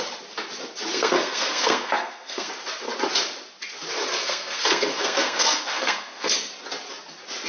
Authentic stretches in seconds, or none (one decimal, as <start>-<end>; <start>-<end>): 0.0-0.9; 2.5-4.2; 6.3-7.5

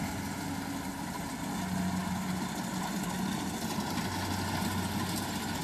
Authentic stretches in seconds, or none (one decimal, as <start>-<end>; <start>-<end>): 0.0-5.6

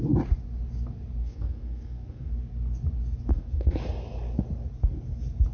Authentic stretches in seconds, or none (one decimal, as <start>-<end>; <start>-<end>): 0.0-1.2; 2.3-3.3; 3.8-5.5